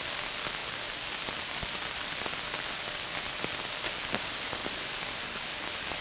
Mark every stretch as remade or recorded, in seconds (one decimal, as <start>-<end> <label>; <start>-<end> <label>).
0.0-6.0 recorded